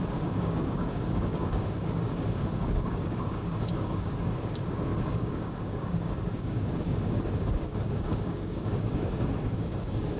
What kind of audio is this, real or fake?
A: fake